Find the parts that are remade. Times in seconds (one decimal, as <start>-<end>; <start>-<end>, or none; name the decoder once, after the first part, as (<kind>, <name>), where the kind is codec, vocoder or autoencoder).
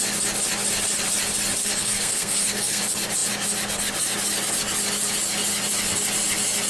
1.6-2.8 (codec, SNAC)